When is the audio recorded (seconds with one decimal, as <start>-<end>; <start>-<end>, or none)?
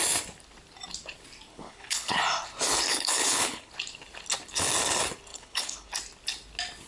0.0-1.5; 2.2-2.9; 3.7-5.3; 5.9-6.9